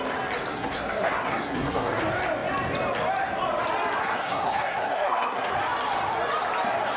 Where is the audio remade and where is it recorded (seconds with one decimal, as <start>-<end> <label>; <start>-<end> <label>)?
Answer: 0.0-0.5 recorded; 0.5-2.0 remade; 2.0-4.0 recorded; 4.0-5.5 remade; 5.5-7.0 recorded